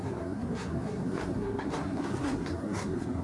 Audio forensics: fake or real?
fake